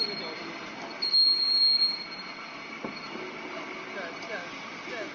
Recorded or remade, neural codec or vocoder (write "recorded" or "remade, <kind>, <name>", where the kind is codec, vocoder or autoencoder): recorded